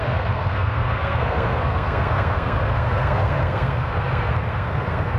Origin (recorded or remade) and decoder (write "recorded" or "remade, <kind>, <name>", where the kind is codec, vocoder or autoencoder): remade, codec, SNAC